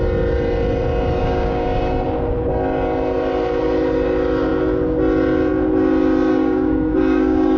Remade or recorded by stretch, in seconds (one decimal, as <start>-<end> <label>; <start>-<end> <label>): 0.0-1.2 recorded; 1.2-1.8 remade; 1.8-6.3 recorded; 6.3-7.6 remade